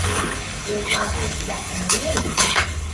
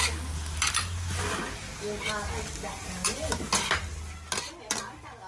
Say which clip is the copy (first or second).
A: first